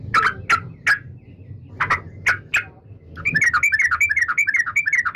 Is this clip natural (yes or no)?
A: yes